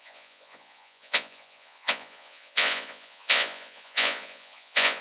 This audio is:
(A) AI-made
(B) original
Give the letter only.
A